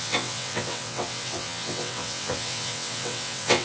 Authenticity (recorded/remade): remade